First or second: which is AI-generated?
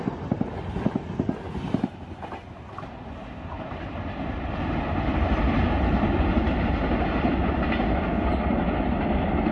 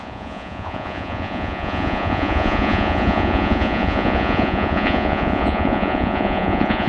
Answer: second